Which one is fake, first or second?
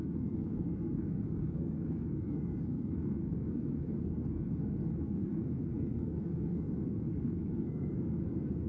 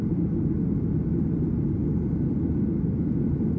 first